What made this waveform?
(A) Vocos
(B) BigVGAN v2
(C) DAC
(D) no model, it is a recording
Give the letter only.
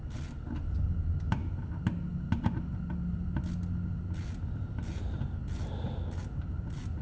D